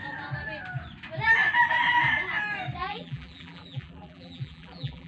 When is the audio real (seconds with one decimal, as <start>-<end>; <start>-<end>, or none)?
0.0-2.8